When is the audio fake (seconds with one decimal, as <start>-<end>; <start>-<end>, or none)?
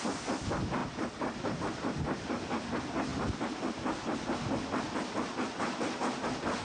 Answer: 0.8-1.6